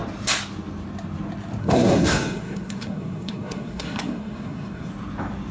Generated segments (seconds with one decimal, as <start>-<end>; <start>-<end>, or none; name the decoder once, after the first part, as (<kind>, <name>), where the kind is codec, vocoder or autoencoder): 1.6-4.9 (codec, SNAC)